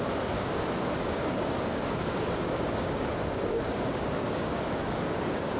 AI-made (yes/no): yes